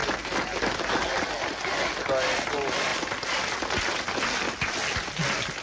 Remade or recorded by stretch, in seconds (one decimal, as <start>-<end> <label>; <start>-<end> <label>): 0.0-5.6 recorded